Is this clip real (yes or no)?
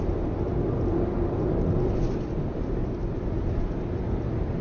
yes